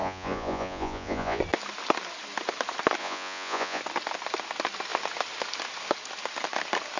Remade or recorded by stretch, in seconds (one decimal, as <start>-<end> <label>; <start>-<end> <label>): 0.0-1.4 remade; 1.4-3.0 recorded; 3.0-3.8 remade; 3.8-7.0 recorded